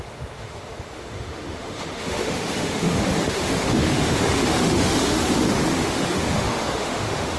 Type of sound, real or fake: fake